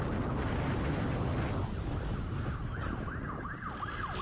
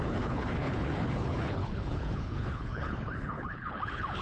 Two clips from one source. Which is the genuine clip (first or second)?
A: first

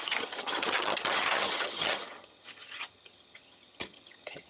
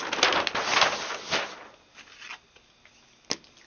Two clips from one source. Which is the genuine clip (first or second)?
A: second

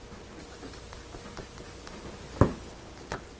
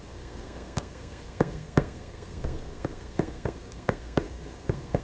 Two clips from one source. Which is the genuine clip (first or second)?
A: first